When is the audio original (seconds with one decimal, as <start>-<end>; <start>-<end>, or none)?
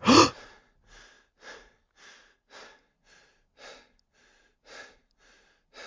0.0-5.9